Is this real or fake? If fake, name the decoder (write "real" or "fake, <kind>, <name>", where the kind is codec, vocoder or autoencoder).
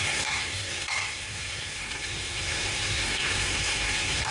fake, codec, SNAC